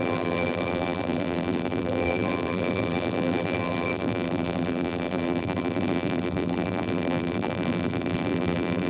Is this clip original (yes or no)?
no